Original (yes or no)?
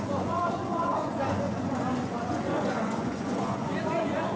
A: no